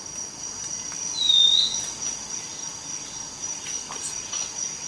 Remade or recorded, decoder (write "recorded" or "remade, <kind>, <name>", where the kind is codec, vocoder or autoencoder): recorded